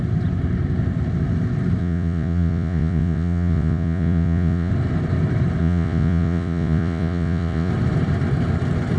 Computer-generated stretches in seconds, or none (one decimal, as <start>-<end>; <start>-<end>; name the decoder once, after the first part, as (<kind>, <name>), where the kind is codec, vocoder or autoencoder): 1.8-4.7 (vocoder, Vocos); 5.6-7.7